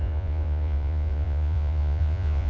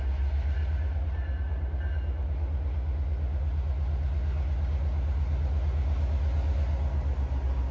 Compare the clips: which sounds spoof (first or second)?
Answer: first